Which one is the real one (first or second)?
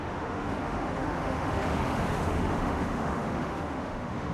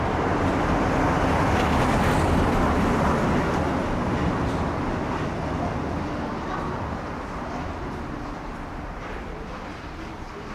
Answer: second